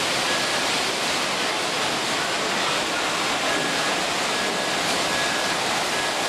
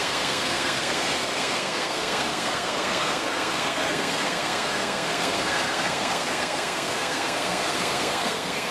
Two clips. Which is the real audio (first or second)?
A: first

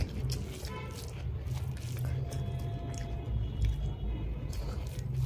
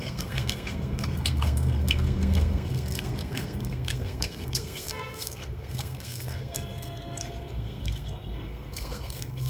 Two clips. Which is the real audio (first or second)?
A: first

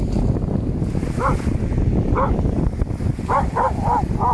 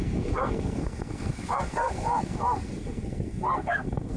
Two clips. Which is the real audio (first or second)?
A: first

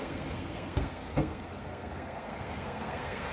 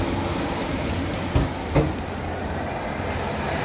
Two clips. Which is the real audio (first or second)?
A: second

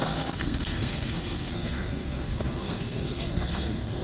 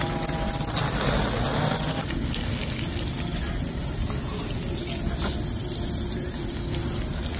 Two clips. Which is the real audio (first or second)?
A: second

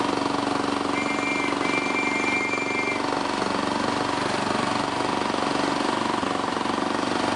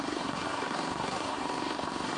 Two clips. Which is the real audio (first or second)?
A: first